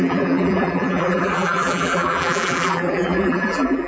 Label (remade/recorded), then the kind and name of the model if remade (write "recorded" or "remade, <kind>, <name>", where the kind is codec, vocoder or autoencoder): remade, vocoder, BigVGAN v2